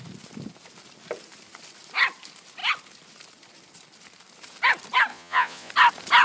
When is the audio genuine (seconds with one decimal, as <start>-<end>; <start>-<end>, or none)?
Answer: 0.0-5.1; 5.7-6.2